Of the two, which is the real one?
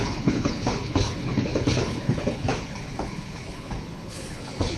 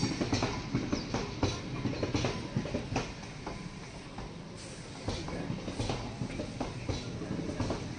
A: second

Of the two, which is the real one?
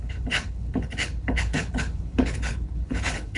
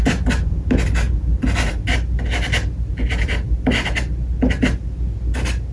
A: second